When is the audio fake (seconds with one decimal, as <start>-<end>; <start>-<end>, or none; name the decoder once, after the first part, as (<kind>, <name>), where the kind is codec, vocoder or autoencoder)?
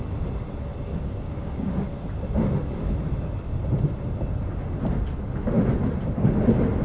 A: 0.9-1.9 (codec, DAC)